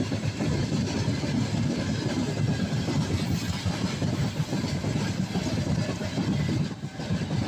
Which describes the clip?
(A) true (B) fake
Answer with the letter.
A